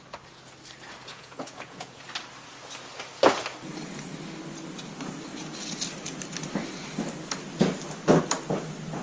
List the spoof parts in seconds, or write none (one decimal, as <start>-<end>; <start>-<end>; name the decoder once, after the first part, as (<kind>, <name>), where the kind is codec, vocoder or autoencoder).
1.0-2.0 (vocoder, Vocos)